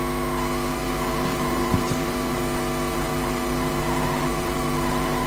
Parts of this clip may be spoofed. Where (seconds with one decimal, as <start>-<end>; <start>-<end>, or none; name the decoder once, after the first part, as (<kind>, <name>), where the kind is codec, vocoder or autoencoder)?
0.7-2.4 (vocoder, BigVGAN v2); 2.9-5.3